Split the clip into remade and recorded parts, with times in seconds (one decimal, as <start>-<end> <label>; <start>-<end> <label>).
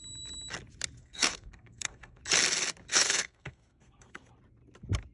0.0-1.0 recorded; 1.0-2.2 remade; 2.2-2.9 recorded; 2.9-4.3 remade; 4.3-5.1 recorded